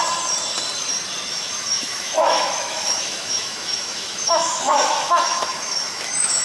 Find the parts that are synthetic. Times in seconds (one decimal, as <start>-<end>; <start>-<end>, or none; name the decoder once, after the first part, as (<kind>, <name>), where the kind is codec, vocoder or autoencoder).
1.3-6.4 (autoencoder, DAC-VAE)